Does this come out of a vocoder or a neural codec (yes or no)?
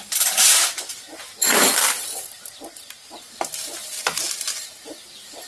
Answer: no